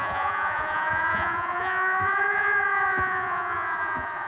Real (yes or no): no